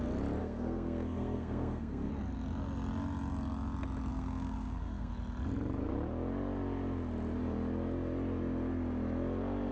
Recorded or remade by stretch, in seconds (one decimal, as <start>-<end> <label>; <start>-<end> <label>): 0.0-0.4 recorded; 0.4-2.1 remade; 2.1-4.1 recorded; 4.1-5.1 remade; 5.1-9.7 recorded